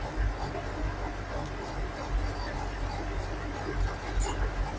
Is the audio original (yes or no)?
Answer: yes